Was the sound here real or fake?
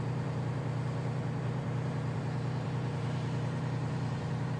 fake